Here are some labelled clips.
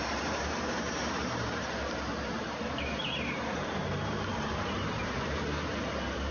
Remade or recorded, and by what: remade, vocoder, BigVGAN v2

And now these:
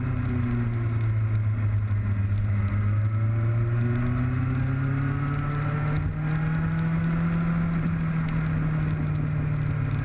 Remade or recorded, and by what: recorded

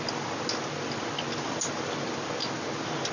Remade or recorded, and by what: recorded